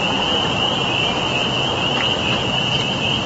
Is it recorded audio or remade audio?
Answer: recorded